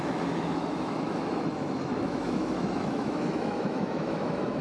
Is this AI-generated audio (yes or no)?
yes